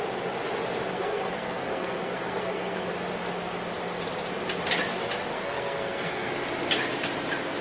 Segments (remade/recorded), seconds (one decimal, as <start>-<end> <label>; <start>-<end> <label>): 0.0-0.9 recorded; 0.9-2.9 remade; 2.9-5.3 recorded; 5.3-6.3 remade; 6.3-7.6 recorded